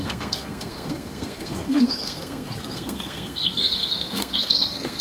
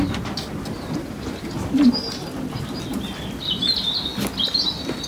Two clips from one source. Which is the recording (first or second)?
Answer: second